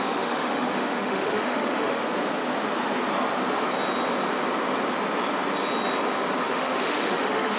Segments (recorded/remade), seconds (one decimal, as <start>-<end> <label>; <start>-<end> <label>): 0.0-2.0 remade; 2.0-6.4 recorded; 6.4-7.6 remade